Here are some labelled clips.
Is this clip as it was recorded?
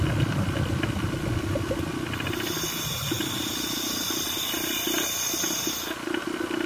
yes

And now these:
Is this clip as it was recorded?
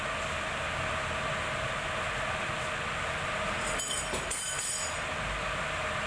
yes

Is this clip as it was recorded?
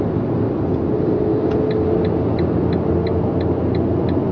yes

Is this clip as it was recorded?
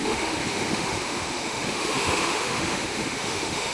no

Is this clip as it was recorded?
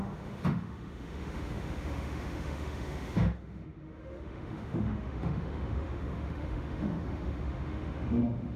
no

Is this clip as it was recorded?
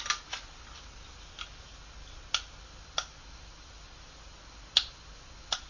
yes